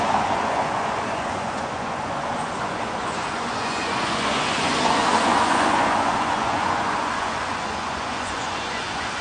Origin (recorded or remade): remade